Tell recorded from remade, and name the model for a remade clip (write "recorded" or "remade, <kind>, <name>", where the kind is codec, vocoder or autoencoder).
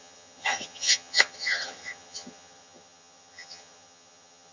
remade, vocoder, HiFi-GAN